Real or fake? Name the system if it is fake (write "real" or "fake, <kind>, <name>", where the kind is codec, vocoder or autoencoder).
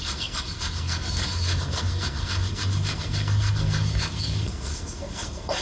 fake, codec, SNAC